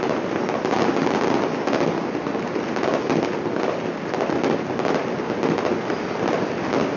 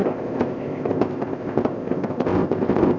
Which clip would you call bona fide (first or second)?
first